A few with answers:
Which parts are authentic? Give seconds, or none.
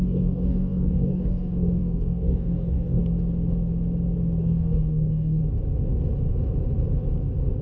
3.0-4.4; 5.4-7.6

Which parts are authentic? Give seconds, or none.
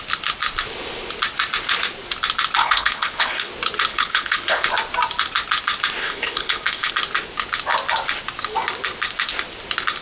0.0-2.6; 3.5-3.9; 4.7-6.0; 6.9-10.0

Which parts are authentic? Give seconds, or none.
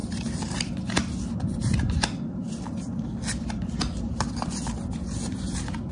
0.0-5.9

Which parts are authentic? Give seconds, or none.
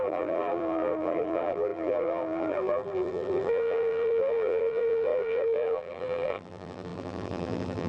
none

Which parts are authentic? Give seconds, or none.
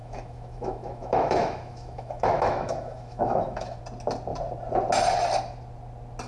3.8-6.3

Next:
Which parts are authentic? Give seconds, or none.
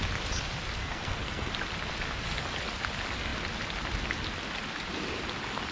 0.0-0.8; 1.5-5.7